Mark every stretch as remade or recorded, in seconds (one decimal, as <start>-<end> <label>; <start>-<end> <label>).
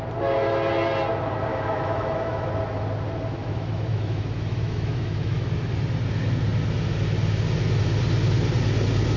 0.0-1.5 recorded; 1.5-2.5 remade; 2.5-3.4 recorded; 3.4-5.4 remade; 5.4-9.2 recorded